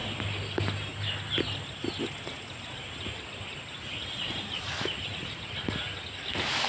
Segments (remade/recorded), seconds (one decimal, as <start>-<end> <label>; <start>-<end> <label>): 0.0-6.7 recorded